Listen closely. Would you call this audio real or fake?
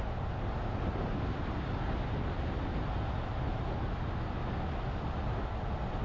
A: real